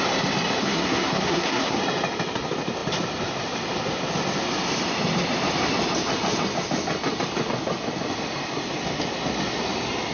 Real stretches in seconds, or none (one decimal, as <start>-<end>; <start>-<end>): 0.0-0.6; 1.8-10.1